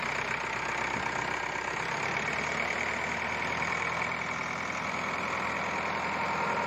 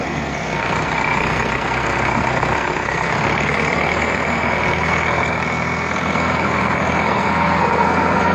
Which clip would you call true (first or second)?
first